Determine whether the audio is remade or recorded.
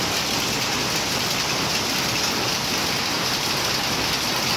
recorded